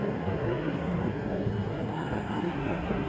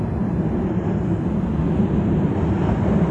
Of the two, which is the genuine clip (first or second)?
second